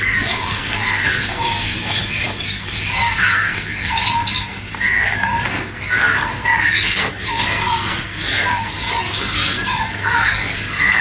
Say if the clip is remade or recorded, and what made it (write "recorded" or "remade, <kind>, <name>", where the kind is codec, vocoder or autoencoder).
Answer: remade, codec, SNAC